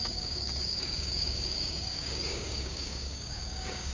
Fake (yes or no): yes